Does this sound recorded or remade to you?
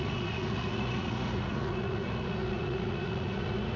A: remade